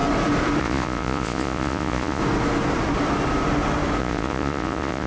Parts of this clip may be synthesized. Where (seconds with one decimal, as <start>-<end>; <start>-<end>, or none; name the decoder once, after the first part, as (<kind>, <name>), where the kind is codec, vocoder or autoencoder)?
0.6-2.2 (vocoder, Vocos); 4.0-5.1